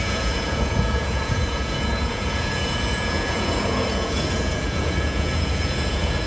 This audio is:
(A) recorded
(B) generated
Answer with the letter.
B